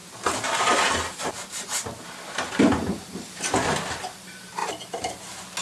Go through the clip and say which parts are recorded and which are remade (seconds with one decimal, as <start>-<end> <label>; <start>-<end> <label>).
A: 0.0-5.6 recorded